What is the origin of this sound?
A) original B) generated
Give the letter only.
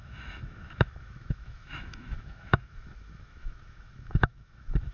B